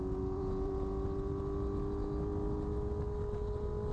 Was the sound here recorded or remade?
recorded